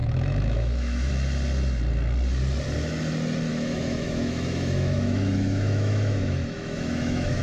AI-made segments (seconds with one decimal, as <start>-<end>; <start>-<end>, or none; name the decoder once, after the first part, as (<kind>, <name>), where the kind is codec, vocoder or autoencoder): 0.0-1.1 (autoencoder, DAC-VAE); 3.5-7.4